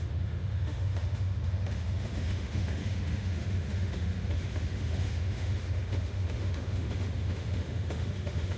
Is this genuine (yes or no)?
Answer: no